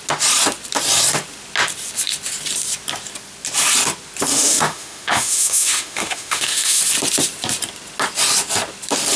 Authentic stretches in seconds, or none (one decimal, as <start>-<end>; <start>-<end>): 0.0-4.3; 6.8-9.2